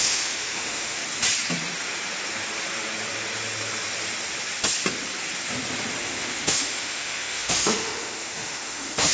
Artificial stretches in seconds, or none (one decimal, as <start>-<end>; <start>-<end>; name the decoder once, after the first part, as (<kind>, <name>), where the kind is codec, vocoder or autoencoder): 0.0-1.0 (autoencoder, DAC-VAE); 6.0-9.1